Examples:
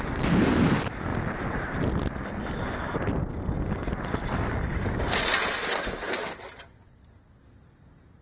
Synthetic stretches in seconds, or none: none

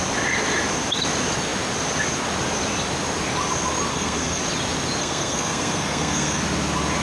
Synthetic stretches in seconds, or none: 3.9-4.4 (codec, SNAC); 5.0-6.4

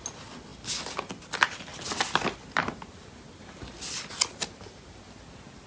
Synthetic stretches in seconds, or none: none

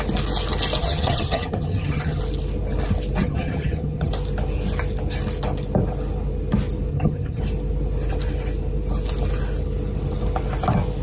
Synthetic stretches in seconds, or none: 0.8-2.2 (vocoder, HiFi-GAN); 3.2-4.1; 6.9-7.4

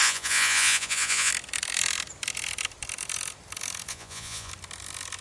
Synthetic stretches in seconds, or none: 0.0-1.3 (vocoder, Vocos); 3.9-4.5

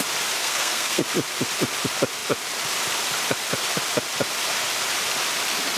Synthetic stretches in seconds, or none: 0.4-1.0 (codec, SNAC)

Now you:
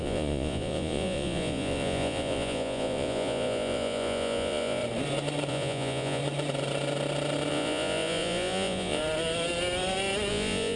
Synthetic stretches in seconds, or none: 0.0-4.8 (vocoder, Vocos); 5.5-6.2; 7.5-9.0; 10.3-10.8

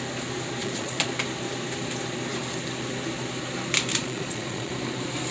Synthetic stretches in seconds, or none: 0.6-1.1 (vocoder, Vocos); 4.0-4.7